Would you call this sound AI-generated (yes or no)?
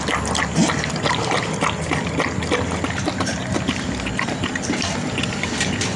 no